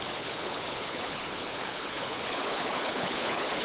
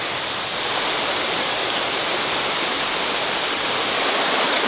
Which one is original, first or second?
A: second